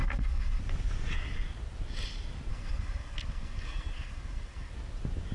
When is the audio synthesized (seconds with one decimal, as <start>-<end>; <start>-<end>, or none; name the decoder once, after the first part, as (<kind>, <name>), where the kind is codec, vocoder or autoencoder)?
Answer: 0.0-0.6 (codec, SNAC); 2.5-4.7

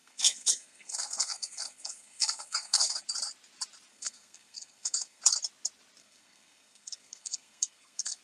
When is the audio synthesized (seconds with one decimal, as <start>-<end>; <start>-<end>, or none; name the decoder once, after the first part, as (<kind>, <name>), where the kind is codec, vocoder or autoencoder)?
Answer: 0.0-3.0 (codec, SNAC); 3.9-5.2; 6.0-8.2

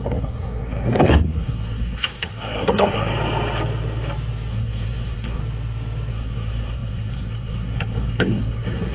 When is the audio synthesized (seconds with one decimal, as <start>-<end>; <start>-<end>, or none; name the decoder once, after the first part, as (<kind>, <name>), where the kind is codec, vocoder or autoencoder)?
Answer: 0.0-3.1 (codec, SNAC); 4.5-5.4; 6.1-8.9